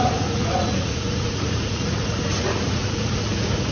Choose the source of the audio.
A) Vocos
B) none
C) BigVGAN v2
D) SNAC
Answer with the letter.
A